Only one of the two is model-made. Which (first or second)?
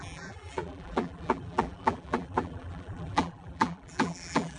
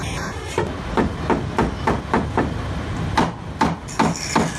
first